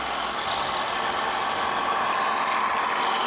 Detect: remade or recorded recorded